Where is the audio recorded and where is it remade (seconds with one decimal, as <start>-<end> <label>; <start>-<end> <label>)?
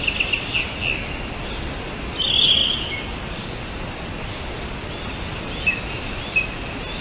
0.0-7.0 recorded